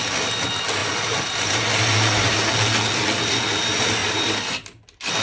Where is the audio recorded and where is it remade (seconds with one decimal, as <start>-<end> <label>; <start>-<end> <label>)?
0.0-0.8 recorded; 0.8-2.5 remade; 2.5-4.0 recorded; 4.0-4.5 remade; 4.5-5.2 recorded